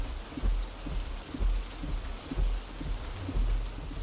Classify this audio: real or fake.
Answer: real